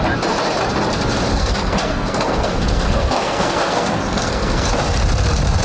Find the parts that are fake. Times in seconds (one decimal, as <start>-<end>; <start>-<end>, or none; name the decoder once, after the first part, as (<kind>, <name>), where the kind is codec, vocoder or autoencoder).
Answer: 1.3-4.7 (codec, SNAC)